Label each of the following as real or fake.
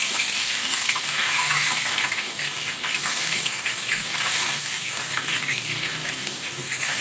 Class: fake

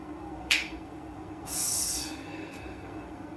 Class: fake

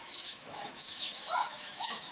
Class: fake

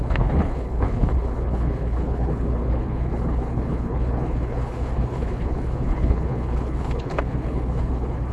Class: fake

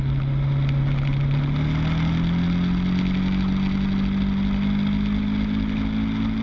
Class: real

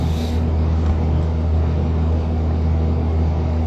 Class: fake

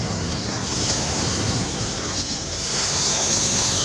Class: fake